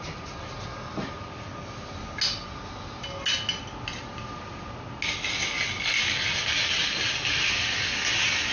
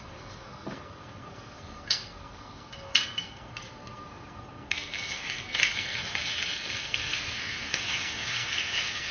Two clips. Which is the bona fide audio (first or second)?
first